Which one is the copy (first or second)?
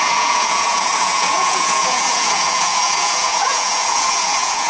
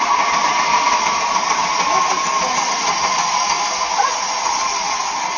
first